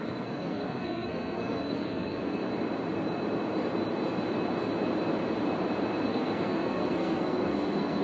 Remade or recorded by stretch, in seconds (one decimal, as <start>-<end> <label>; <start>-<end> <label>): 0.0-2.5 remade; 2.5-6.1 recorded; 6.1-8.0 remade